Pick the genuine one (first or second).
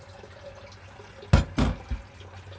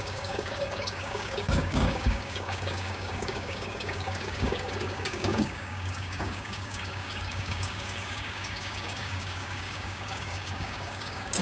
first